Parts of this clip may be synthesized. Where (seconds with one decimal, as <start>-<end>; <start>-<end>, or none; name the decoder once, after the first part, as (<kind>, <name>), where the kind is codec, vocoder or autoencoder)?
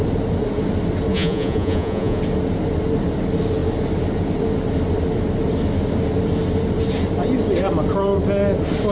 1.1-2.2 (vocoder, Vocos)